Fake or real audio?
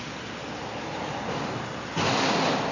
real